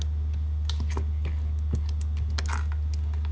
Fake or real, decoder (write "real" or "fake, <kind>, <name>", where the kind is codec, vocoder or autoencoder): real